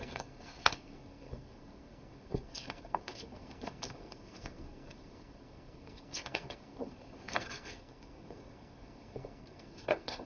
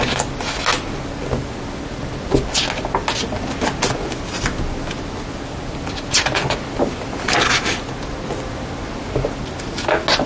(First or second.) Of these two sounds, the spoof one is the first